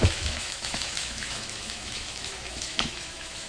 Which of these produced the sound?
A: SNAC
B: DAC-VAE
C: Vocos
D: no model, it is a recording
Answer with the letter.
B